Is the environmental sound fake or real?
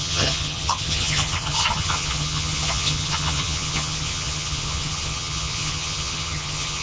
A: fake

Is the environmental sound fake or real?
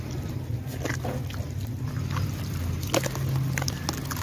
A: real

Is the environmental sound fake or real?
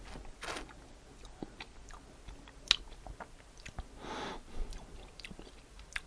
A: real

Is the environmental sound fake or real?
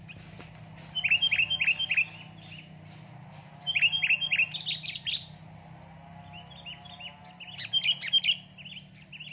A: real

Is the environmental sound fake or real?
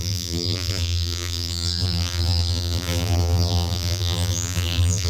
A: fake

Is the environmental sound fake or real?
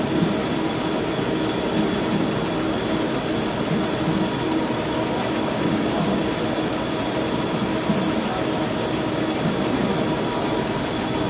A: real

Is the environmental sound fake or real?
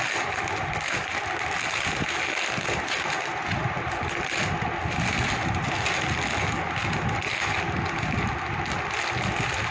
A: real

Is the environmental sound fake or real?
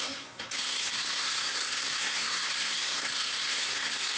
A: fake